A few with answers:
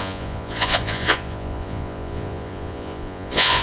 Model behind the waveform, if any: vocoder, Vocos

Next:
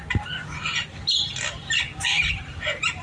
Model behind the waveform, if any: none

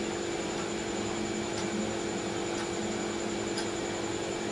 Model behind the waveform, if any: none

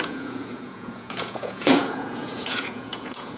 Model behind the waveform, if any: vocoder, Vocos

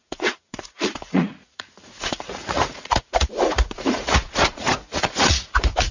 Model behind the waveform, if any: vocoder, Vocos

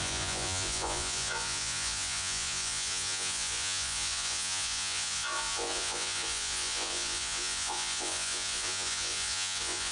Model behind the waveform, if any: vocoder, Vocos